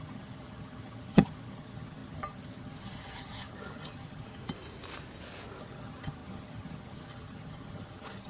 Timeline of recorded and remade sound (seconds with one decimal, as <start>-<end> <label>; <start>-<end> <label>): 0.0-4.4 remade; 4.4-5.6 recorded; 5.6-8.3 remade